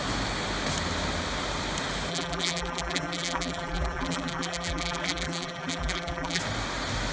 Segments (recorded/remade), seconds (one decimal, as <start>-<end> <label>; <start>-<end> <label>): 0.0-2.1 recorded; 2.1-6.4 remade; 6.4-7.1 recorded